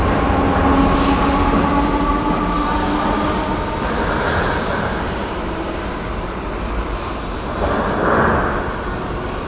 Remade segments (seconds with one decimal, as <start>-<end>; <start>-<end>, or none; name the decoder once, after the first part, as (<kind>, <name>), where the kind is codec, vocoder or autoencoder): none